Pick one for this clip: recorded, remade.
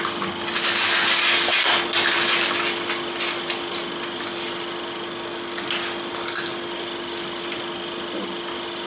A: recorded